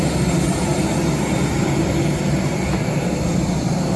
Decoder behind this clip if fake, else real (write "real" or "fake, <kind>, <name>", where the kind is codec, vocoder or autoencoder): real